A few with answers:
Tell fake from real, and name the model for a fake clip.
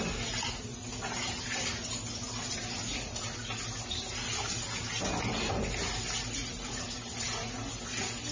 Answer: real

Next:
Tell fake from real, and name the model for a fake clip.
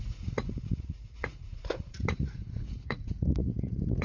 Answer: fake, vocoder, Vocos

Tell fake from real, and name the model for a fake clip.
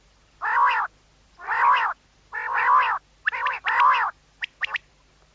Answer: real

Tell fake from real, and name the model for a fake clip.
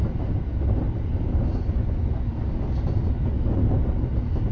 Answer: real